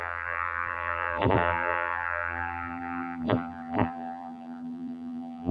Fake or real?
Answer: fake